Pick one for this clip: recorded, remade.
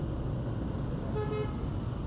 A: recorded